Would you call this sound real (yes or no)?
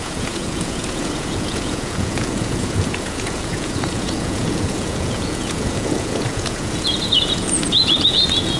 no